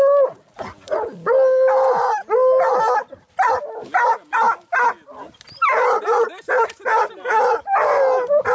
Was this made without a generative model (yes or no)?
yes